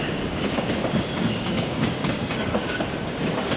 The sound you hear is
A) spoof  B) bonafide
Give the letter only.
A